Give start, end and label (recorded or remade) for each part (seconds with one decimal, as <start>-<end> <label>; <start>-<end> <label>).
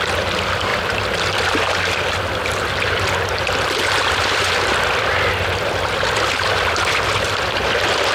0.0-0.7 remade; 0.7-5.3 recorded; 5.3-8.1 remade